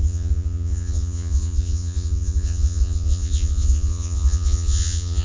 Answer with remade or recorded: remade